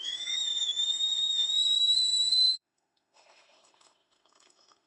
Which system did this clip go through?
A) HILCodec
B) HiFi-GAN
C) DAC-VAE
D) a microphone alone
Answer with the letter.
C